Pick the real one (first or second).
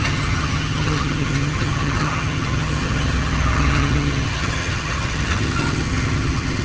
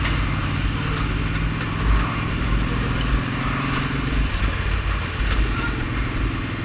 second